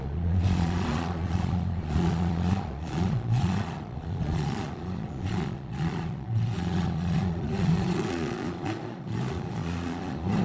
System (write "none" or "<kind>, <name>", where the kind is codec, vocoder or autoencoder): vocoder, Vocos